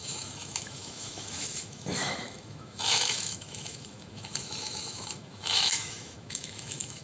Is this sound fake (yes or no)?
yes